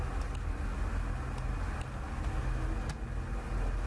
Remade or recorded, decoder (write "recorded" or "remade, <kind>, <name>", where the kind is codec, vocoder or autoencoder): recorded